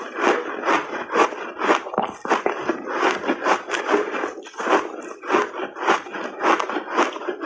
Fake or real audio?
real